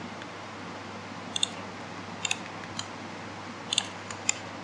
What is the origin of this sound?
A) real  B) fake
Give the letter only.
A